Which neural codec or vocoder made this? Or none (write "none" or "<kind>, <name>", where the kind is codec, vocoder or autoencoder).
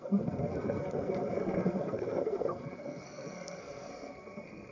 codec, SNAC